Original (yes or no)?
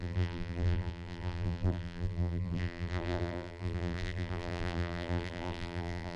no